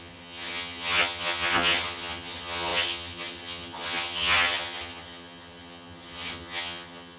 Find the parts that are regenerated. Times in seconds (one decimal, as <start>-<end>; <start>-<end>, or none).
0.0-7.2